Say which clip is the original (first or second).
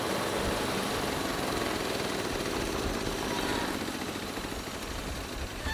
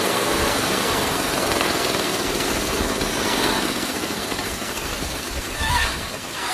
first